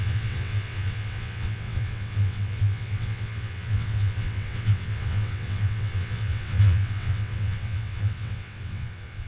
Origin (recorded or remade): remade